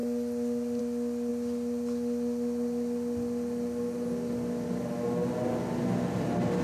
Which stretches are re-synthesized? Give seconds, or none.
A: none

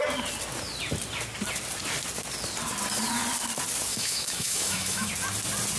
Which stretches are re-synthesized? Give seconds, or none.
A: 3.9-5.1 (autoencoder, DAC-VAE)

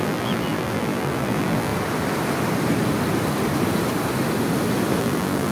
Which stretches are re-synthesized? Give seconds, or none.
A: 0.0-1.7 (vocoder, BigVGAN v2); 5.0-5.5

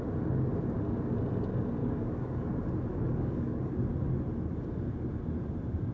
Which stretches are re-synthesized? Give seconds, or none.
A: 1.8-2.5 (codec, DAC); 2.9-3.7